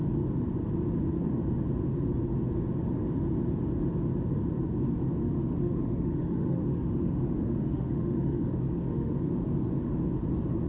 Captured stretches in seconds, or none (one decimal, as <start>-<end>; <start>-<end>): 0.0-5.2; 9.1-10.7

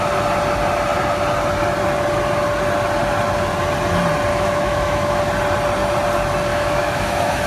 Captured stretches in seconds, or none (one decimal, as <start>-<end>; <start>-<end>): 0.0-4.3; 5.2-6.5

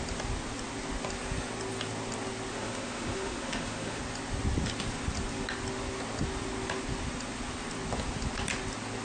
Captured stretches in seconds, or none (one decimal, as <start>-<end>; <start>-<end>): 0.0-2.5; 4.0-9.0

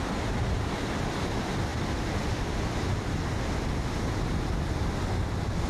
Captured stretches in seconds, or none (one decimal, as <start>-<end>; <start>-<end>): 0.0-5.7

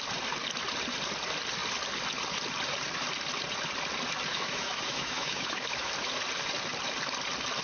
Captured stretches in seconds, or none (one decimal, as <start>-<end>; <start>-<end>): 0.0-4.3; 5.9-7.6

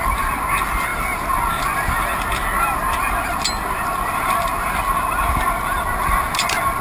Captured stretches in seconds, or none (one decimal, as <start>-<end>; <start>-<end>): 0.0-6.8